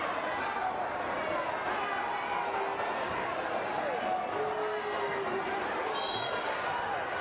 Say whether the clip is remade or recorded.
recorded